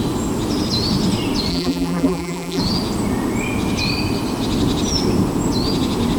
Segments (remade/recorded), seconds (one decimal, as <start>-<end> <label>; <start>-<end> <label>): 0.0-1.5 recorded; 1.5-2.6 remade; 2.6-6.2 recorded